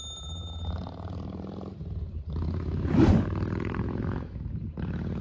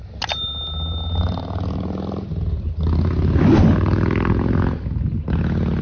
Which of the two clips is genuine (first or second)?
second